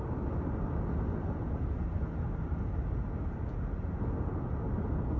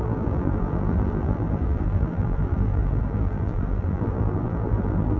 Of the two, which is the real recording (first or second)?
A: first